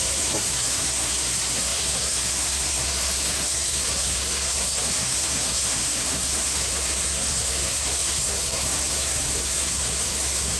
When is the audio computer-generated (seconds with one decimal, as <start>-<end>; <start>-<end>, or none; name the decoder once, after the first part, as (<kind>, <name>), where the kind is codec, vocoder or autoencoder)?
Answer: 0.0-10.6 (codec, SNAC)